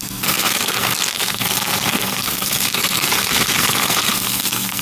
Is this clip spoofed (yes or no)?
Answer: yes